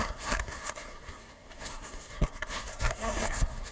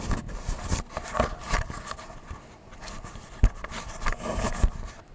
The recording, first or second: second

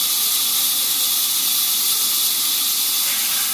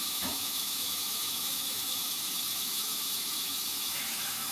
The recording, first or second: first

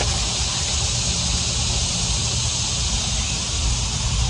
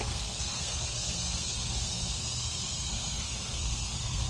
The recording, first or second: first